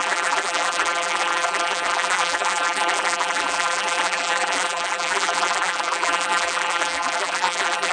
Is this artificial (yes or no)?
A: yes